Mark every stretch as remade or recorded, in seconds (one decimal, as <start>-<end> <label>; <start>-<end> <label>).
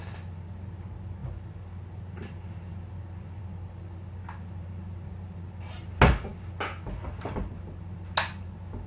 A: 0.0-8.9 recorded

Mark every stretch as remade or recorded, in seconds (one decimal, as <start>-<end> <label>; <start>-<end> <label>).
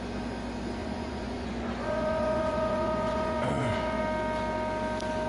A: 0.0-0.8 recorded; 0.8-4.0 remade; 4.0-5.3 recorded